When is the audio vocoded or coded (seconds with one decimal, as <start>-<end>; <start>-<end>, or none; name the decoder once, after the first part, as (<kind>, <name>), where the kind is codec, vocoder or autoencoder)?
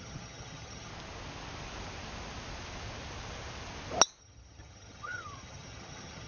0.0-0.9 (vocoder, HiFi-GAN); 4.2-6.3